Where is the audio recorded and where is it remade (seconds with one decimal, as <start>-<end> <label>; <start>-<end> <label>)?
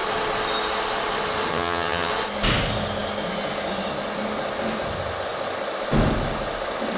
0.0-1.5 recorded; 1.5-2.1 remade; 2.1-7.0 recorded